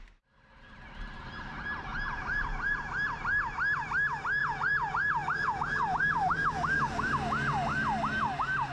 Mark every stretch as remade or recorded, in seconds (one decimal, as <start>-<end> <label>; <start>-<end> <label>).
0.0-1.9 recorded; 1.9-2.9 remade; 2.9-4.4 recorded; 4.4-7.1 remade; 7.1-8.7 recorded